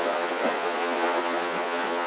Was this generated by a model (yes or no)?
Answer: yes